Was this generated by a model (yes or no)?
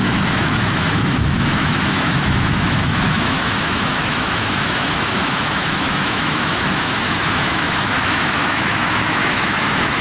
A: yes